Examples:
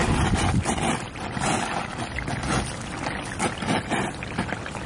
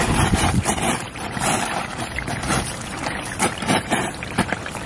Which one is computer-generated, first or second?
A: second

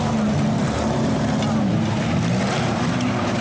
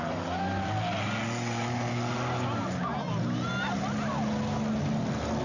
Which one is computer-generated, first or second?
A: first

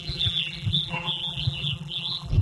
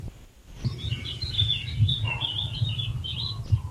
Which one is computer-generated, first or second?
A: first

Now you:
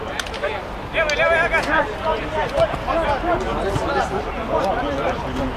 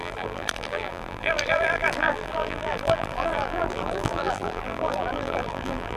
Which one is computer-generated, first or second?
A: second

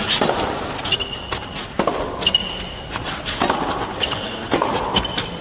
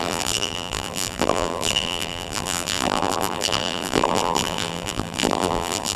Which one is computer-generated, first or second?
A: second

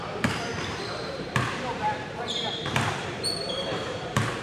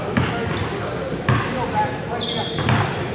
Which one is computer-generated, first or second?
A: first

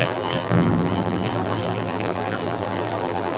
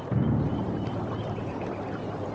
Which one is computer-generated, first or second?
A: first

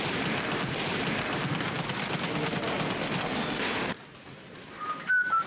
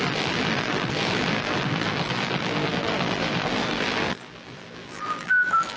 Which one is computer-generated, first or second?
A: second